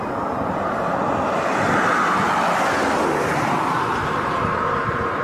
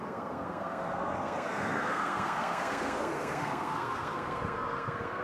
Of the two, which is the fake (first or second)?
second